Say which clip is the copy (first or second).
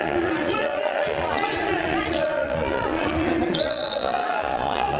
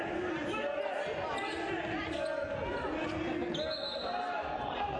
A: first